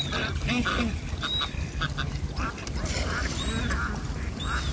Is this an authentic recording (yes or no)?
yes